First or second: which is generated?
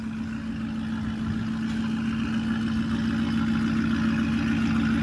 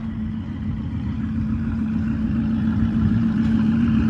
second